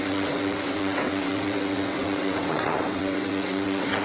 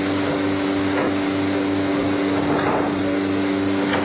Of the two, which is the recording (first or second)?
second